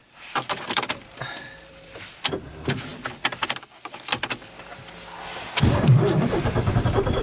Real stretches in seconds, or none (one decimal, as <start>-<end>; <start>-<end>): 2.1-7.2